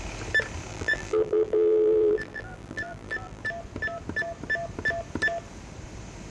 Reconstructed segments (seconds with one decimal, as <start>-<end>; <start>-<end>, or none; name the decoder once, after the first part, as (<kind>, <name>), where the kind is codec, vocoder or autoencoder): 0.7-3.4 (vocoder, BigVGAN v2)